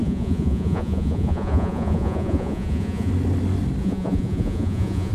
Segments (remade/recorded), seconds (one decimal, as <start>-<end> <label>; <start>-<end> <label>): 0.0-3.1 remade; 3.1-3.8 recorded; 3.8-5.1 remade